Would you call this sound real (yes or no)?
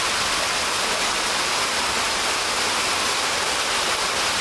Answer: yes